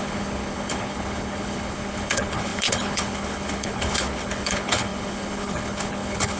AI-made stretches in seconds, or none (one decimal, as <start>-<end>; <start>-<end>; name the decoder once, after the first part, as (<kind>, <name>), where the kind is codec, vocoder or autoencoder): 0.0-6.4 (codec, HILCodec)